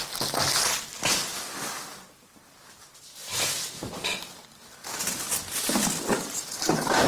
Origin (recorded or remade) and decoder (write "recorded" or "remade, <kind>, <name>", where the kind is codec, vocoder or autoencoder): recorded